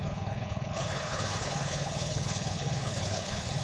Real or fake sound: fake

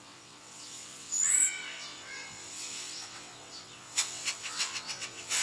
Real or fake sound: fake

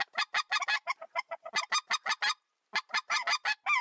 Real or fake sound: real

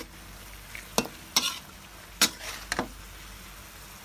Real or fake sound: real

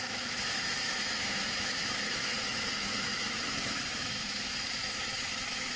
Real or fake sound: fake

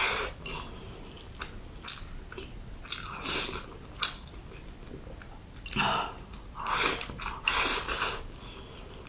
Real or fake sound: real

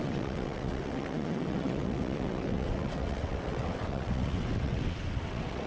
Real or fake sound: fake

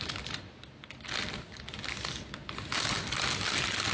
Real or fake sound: real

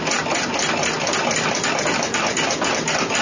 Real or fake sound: real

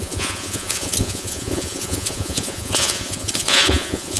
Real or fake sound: fake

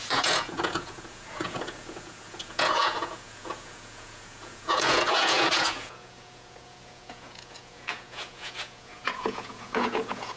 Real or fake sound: fake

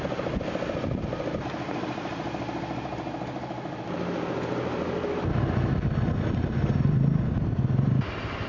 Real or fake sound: real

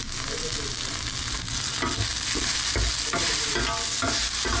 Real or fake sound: real